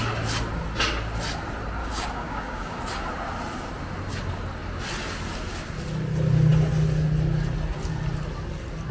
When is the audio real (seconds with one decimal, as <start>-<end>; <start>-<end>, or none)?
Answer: 0.0-1.8; 2.8-8.9